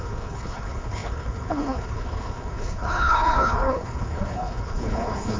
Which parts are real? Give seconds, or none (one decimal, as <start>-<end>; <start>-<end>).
none